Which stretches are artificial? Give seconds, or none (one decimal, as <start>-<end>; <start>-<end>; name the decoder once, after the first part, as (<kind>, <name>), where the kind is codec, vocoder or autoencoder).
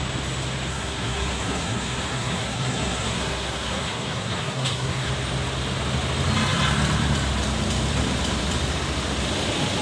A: 0.7-5.1 (codec, SNAC)